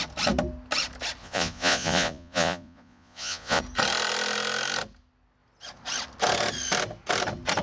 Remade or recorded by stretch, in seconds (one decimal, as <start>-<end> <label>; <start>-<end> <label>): 0.0-1.2 recorded; 1.2-3.6 remade; 3.6-7.6 recorded

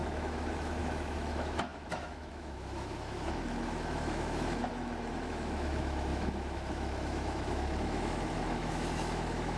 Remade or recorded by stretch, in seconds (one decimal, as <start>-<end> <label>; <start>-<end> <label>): 0.0-9.6 remade

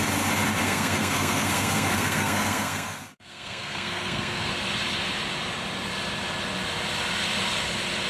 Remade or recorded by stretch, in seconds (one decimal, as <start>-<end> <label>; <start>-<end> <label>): 0.0-0.6 recorded; 0.6-4.5 remade; 4.5-8.1 recorded

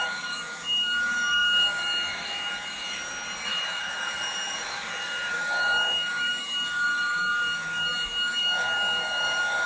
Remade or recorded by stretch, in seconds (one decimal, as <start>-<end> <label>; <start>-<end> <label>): 0.0-3.0 remade; 3.0-3.5 recorded; 3.5-9.7 remade